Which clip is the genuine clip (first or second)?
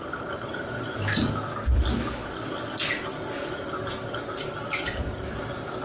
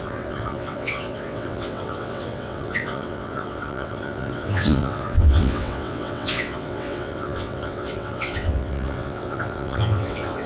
first